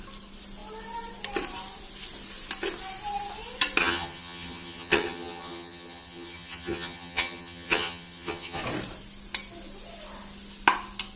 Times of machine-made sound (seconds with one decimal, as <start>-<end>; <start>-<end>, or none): 3.8-8.6